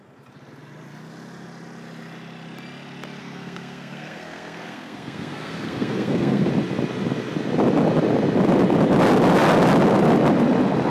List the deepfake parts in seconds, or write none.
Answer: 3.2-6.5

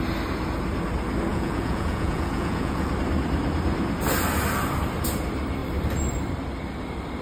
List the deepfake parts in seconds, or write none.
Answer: 1.3-2.9

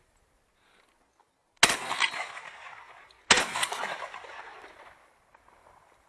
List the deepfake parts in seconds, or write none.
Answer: none

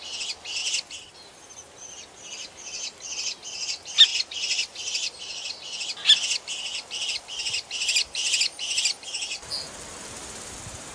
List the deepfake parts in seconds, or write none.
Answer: 4.1-5.2; 6.7-7.7; 10.2-10.9

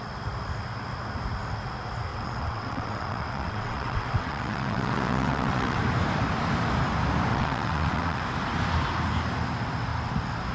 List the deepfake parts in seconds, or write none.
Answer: 2.1-5.8; 7.3-8.2

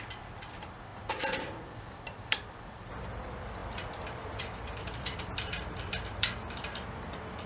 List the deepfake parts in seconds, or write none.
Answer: 0.0-7.5

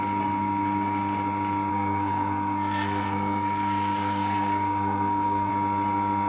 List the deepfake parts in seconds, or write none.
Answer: 1.7-5.5

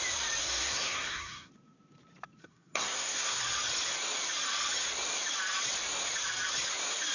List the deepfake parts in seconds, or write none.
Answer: 0.4-1.5; 2.4-3.4